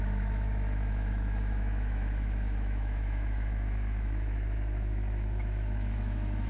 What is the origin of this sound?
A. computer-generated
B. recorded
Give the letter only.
A